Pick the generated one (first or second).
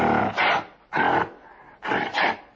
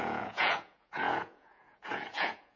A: second